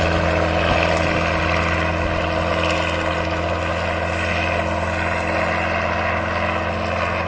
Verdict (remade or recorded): recorded